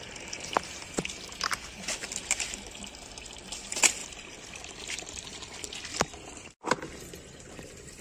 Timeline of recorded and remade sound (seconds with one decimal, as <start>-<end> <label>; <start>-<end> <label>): 0.0-4.0 recorded; 4.0-8.0 remade